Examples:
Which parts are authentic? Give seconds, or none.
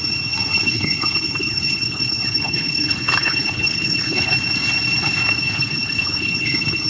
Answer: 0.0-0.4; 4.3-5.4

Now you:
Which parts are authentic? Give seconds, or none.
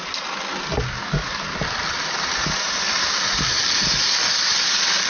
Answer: 0.0-5.1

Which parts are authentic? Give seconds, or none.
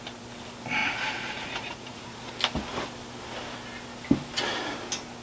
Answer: 0.0-0.8; 2.3-5.2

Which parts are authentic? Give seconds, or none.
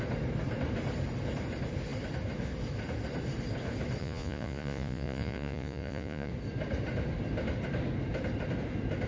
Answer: 0.0-4.0; 6.3-9.1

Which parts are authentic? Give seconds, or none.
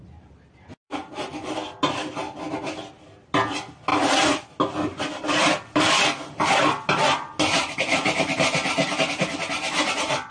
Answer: 0.0-0.8; 1.5-3.9; 4.6-10.3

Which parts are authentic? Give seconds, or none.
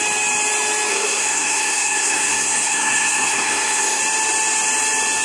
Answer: 0.0-0.9; 4.0-5.2